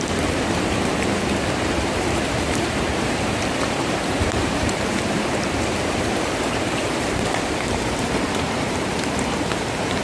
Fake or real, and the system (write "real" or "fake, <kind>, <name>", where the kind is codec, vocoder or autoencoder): fake, vocoder, BigVGAN v2